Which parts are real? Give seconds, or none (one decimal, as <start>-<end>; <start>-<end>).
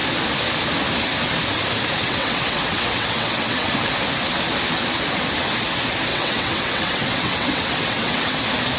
0.0-2.0; 3.7-6.1; 8.4-8.8